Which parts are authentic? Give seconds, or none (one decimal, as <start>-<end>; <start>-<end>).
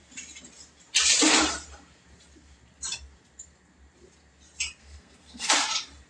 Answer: 0.0-4.8; 5.5-6.1